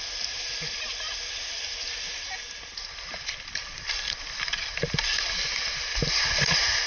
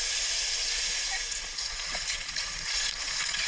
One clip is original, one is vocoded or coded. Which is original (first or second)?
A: first